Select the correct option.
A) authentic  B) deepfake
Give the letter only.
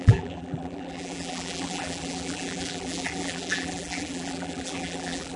B